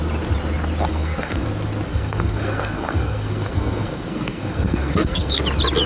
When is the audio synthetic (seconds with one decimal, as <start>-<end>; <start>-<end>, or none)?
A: 0.9-1.5; 1.9-5.4